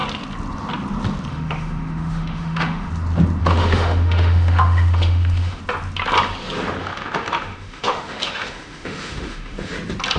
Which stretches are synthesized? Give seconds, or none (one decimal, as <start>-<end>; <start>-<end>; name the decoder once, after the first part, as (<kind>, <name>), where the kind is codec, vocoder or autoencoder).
1.3-2.9 (autoencoder, DAC-VAE); 3.4-5.6; 6.8-9.7